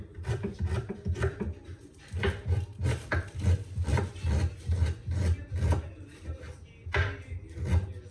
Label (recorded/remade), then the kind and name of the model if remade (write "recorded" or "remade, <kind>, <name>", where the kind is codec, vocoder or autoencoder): recorded